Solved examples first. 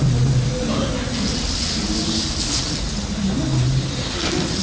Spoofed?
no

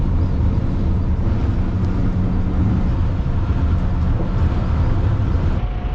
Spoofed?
no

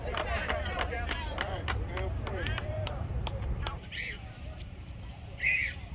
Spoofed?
yes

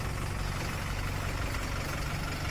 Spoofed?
no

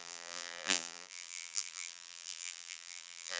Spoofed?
yes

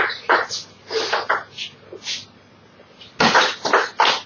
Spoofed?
no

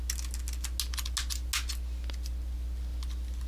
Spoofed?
no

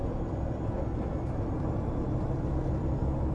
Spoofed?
no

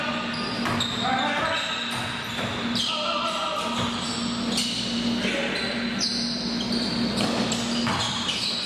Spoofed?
no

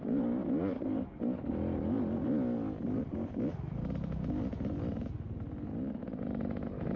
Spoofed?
no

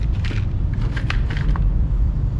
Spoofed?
yes